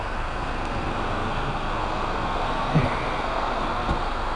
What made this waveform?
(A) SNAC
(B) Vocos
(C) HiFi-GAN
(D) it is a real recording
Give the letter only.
A